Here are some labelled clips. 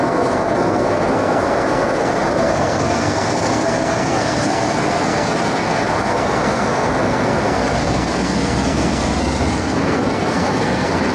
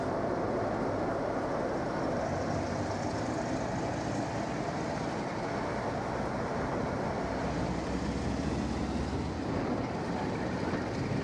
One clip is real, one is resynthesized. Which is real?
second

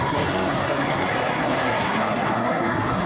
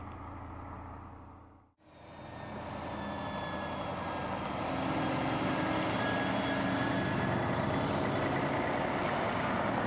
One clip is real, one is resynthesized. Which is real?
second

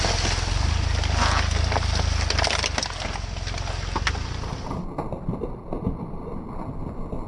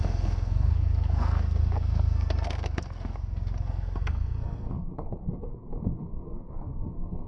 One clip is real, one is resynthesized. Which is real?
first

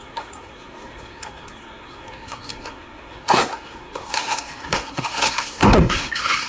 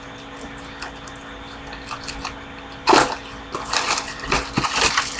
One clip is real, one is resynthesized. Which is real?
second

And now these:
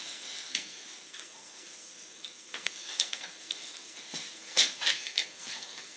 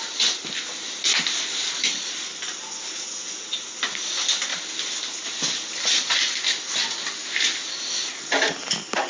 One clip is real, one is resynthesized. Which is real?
second